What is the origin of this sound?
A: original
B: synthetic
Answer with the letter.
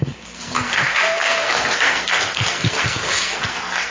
B